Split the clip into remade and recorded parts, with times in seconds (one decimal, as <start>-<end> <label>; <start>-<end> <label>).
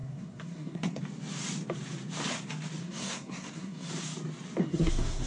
0.0-1.0 remade; 1.0-2.8 recorded; 2.8-3.9 remade; 3.9-4.6 recorded; 4.6-5.3 remade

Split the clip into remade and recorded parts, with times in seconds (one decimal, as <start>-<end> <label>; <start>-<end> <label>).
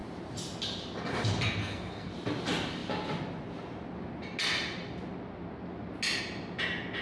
0.0-1.6 recorded; 1.6-2.1 remade; 2.1-7.0 recorded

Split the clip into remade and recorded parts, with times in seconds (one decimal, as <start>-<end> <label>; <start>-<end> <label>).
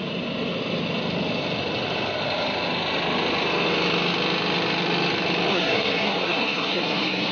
0.0-5.5 recorded; 5.5-7.3 remade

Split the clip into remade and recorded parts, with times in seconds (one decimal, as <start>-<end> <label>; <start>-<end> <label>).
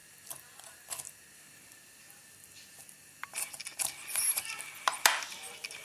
0.0-5.8 recorded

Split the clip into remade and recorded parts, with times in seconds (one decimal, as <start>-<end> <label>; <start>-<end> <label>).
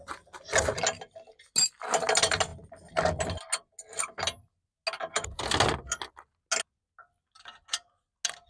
0.0-8.5 recorded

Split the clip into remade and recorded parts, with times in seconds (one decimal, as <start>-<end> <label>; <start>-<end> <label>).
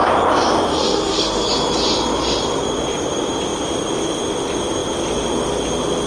0.0-0.7 recorded; 0.7-1.5 remade; 1.5-6.1 recorded